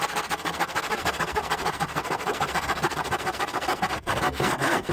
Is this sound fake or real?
fake